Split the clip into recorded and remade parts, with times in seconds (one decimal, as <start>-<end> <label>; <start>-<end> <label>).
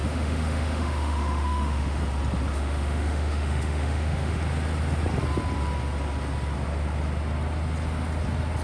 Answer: 0.0-2.0 remade; 2.0-2.5 recorded; 2.5-4.4 remade; 4.4-8.6 recorded